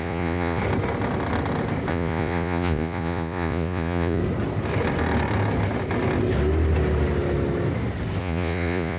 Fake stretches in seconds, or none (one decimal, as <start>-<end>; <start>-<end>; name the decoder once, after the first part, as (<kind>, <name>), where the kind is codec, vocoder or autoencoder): 0.0-0.6 (vocoder, Vocos); 1.9-4.2; 8.2-9.0